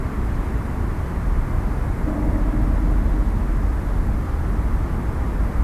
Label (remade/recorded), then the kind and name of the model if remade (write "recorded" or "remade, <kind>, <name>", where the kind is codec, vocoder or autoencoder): recorded